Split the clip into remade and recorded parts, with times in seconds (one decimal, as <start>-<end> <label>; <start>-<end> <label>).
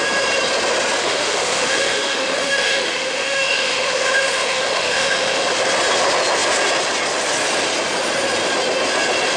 0.0-1.0 recorded; 1.0-5.6 remade; 5.6-9.4 recorded